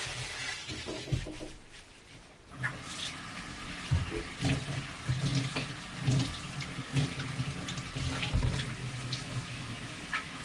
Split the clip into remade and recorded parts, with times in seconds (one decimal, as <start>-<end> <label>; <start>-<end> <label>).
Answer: 0.0-8.8 recorded; 8.8-10.4 remade